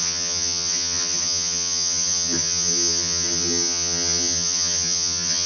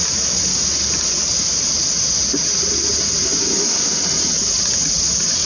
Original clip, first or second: second